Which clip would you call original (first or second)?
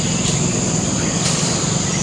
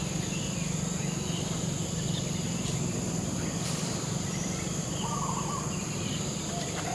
first